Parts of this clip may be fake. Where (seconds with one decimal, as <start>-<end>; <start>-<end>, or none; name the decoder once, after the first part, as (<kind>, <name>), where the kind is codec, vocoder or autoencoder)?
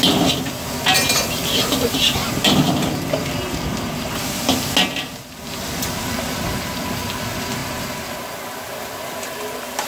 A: 2.2-3.1 (vocoder, BigVGAN v2)